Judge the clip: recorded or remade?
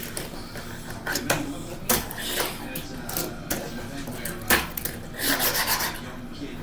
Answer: recorded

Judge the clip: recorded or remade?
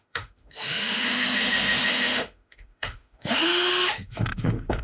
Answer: remade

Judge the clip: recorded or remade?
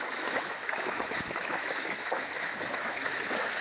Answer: remade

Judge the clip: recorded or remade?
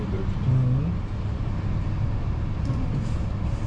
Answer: recorded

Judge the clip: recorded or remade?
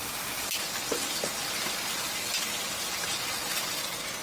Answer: recorded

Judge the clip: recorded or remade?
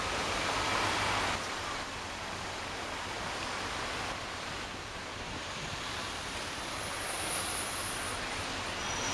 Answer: recorded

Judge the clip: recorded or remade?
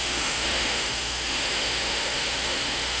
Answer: remade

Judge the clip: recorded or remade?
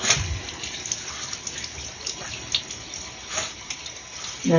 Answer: recorded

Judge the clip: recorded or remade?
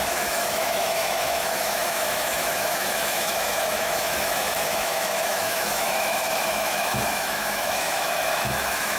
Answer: remade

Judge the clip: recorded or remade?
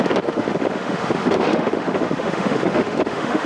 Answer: remade